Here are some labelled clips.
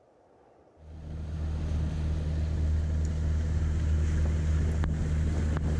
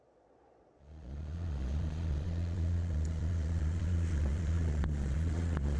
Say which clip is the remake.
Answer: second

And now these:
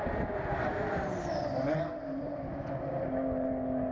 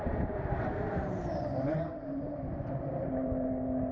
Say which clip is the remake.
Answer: second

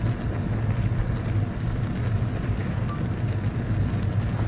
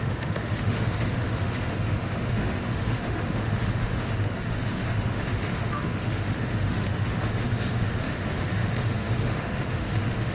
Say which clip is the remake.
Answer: second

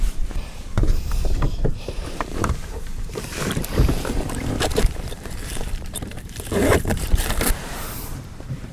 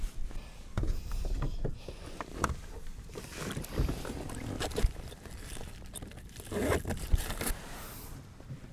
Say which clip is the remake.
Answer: first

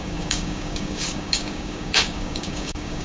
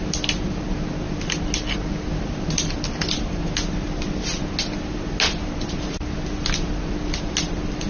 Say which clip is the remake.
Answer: first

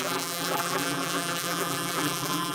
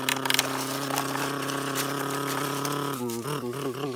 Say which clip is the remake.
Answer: first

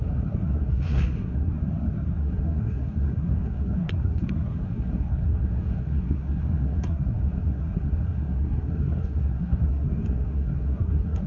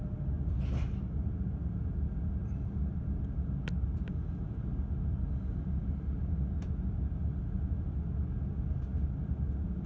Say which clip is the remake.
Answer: first